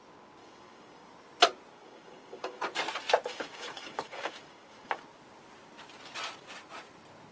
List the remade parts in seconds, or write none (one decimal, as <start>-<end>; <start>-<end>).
0.4-1.1; 1.7-2.6; 3.3-5.0